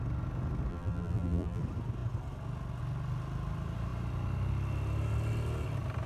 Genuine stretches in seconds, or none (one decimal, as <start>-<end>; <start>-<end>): 0.0-0.7; 1.6-6.1